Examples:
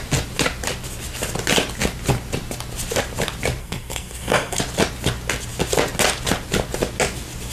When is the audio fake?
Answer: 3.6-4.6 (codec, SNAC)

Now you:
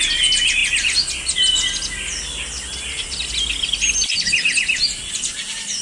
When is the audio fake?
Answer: none

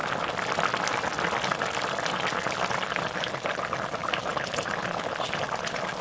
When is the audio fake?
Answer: none

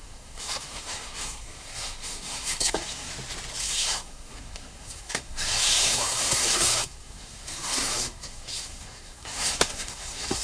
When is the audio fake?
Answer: 0.0-3.1 (codec, SNAC); 3.6-10.4

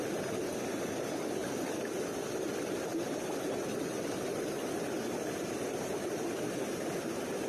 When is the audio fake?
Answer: none

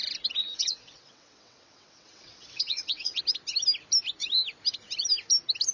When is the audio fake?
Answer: 0.4-3.2 (vocoder, WaveNeXt)